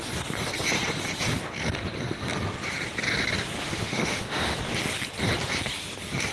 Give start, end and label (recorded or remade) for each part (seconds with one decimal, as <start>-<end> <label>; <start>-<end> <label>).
0.0-3.6 recorded; 3.6-4.6 remade; 4.6-6.3 recorded